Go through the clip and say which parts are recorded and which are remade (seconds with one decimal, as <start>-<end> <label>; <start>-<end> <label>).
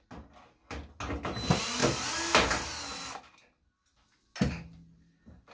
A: 0.0-5.5 recorded